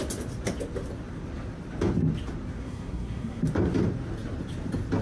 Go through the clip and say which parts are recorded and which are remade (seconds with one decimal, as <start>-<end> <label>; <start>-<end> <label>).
0.0-2.6 recorded; 2.6-3.4 remade; 3.4-5.0 recorded